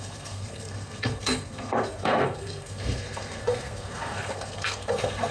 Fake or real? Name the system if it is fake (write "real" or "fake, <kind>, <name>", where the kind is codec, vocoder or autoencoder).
fake, codec, SNAC